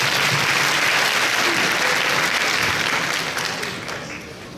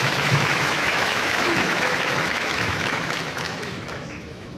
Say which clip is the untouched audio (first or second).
first